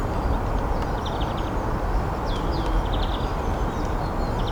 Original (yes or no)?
yes